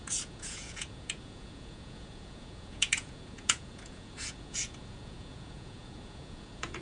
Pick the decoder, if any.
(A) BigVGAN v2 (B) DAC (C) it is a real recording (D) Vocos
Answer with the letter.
D